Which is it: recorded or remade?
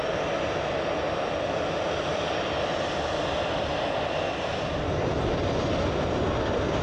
recorded